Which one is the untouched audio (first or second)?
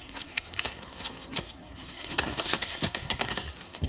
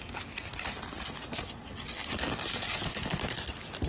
second